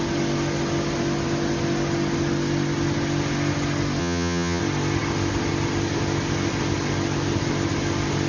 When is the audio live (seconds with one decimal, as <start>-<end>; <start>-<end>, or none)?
0.0-4.0; 4.6-8.3